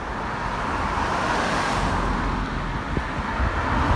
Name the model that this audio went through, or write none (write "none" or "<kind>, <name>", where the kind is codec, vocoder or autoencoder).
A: none